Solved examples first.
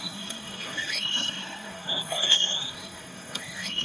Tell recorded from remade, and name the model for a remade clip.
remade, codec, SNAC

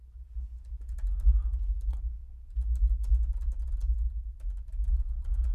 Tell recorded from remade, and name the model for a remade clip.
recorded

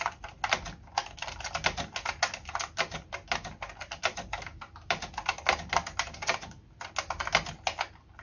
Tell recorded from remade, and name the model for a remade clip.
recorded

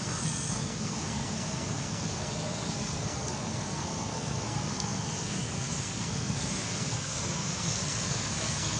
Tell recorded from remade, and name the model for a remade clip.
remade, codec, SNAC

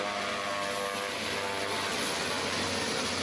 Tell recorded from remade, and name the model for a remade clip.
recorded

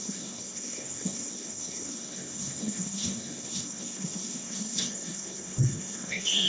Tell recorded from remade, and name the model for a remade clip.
remade, codec, SNAC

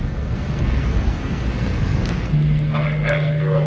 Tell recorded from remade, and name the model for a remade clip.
remade, codec, SNAC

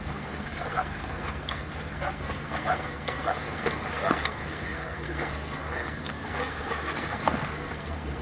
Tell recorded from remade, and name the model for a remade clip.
remade, codec, SNAC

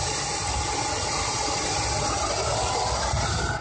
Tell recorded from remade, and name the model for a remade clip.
recorded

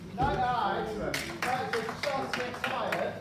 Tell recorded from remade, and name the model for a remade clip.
recorded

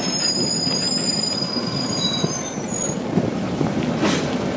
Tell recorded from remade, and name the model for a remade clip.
recorded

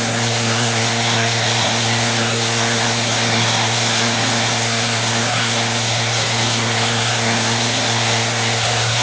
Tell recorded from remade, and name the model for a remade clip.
remade, codec, SNAC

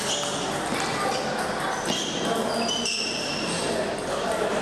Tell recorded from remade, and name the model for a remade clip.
recorded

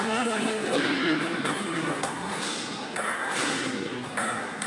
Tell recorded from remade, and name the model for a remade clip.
remade, codec, SNAC